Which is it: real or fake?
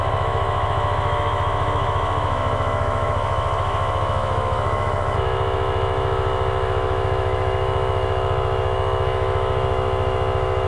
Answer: fake